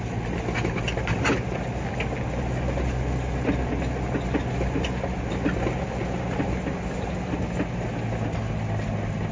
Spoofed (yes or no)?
no